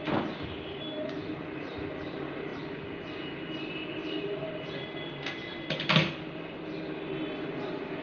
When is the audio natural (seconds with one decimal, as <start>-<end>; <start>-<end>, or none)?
0.0-4.0; 4.8-8.0

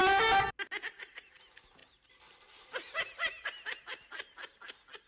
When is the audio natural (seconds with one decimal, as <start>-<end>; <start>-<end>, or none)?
0.0-1.8; 3.8-5.1